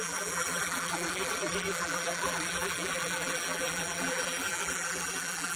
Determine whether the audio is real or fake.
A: fake